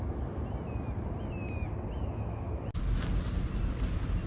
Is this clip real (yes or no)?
yes